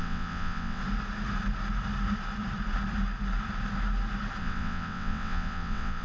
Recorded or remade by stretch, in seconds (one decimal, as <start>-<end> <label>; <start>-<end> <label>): 0.0-0.8 remade; 0.8-4.4 recorded; 4.4-6.0 remade